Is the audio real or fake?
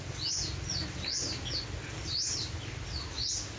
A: real